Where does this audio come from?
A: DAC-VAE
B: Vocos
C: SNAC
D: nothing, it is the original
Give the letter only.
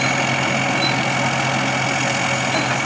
D